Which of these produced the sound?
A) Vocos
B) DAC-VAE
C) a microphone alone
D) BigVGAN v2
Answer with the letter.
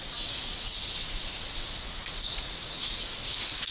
A